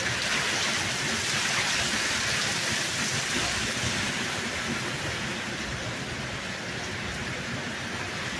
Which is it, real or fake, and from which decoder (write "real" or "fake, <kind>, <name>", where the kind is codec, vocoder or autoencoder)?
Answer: real